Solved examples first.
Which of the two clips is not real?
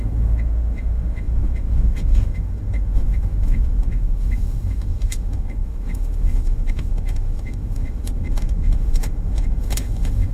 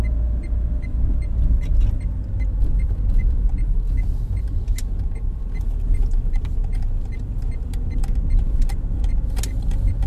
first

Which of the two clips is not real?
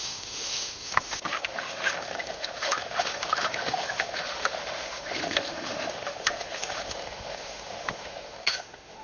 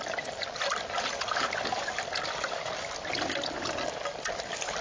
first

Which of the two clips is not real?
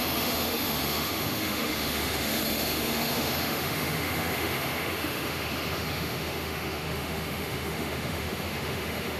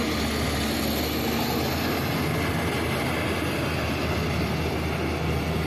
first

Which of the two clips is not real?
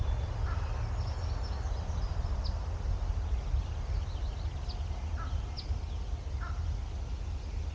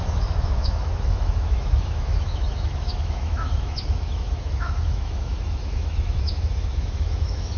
second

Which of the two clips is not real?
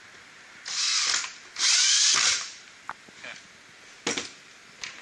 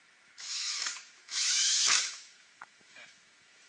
second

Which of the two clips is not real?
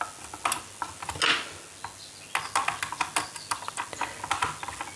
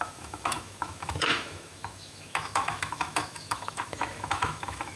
second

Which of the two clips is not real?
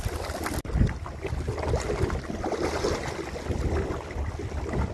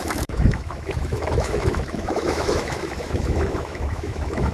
second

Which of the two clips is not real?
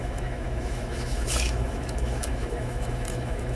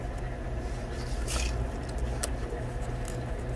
first